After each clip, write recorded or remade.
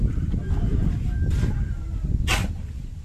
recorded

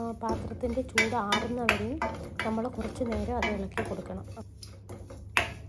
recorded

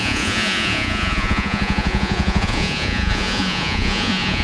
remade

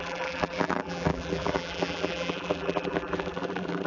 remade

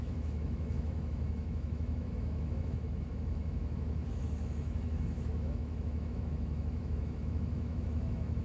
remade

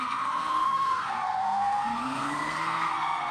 remade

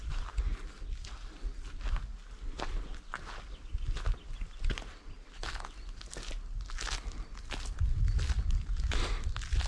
recorded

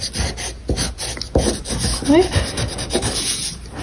recorded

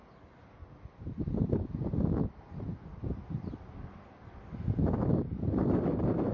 recorded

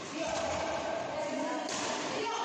remade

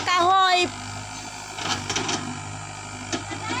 recorded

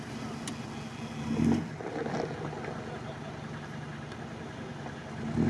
recorded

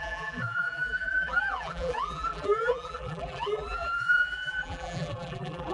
remade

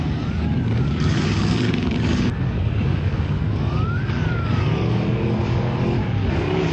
remade